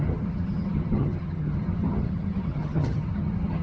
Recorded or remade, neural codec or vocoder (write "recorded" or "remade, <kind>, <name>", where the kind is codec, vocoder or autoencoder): remade, vocoder, HiFi-GAN